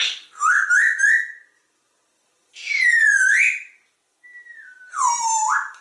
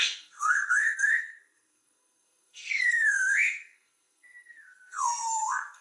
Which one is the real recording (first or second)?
first